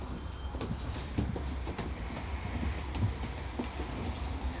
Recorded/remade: recorded